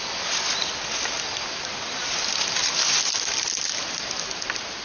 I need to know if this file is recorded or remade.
recorded